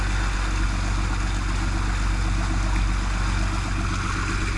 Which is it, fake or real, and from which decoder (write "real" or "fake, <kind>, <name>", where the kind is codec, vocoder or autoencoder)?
real